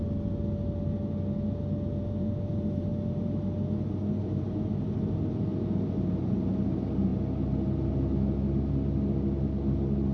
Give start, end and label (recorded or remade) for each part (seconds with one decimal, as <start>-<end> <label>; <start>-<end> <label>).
0.0-10.1 recorded